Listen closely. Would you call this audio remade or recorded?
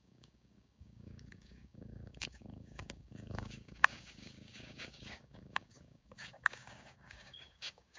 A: remade